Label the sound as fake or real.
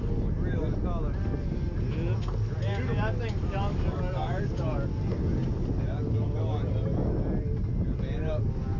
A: real